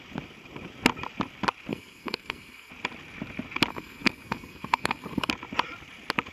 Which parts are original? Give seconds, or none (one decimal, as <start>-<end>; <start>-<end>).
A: 0.0-1.7; 2.7-3.7; 5.3-6.3